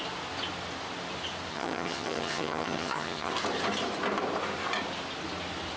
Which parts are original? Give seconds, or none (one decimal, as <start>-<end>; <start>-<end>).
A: 0.0-1.5; 3.3-5.8